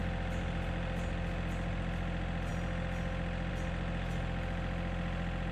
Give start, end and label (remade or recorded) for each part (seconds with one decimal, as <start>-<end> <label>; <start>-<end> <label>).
0.0-5.5 recorded